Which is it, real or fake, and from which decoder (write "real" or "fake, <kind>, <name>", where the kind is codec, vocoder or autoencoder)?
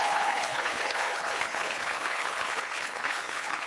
fake, codec, HILCodec